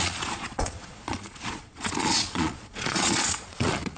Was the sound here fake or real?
fake